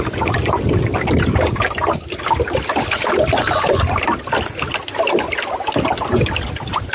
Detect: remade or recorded recorded